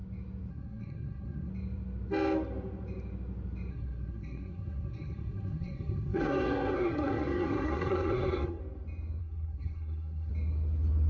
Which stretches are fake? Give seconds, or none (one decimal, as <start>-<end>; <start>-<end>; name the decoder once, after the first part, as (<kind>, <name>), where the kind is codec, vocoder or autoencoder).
0.5-1.5 (codec, SNAC); 3.7-8.6; 9.2-10.3